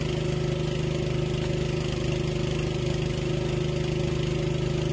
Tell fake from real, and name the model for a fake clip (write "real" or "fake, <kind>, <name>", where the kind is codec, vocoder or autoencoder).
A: real